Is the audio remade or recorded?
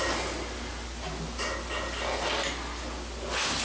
recorded